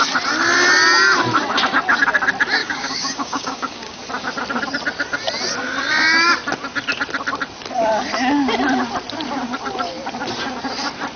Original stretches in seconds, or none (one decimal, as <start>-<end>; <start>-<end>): 0.0-2.6; 4.0-11.2